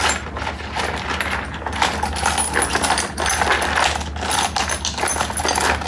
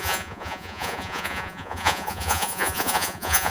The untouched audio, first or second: first